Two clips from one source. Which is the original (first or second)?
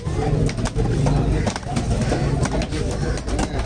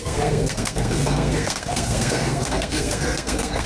first